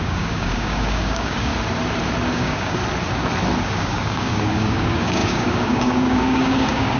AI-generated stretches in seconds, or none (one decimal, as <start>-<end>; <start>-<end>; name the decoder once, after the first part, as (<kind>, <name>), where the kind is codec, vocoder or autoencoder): 0.0-1.5 (codec, DAC); 2.3-2.8; 3.6-7.0